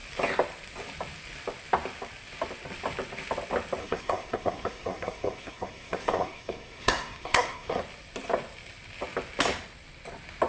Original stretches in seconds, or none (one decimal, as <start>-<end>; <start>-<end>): 0.0-3.8; 7.8-10.5